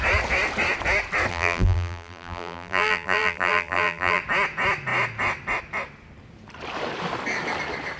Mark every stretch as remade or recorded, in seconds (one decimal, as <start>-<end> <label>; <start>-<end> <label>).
0.0-1.3 recorded; 1.3-4.2 remade; 4.2-8.0 recorded